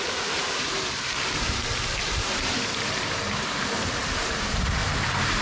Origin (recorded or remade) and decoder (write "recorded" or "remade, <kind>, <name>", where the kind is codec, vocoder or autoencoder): remade, vocoder, BigVGAN v2